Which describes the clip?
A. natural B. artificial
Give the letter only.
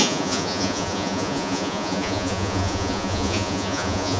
B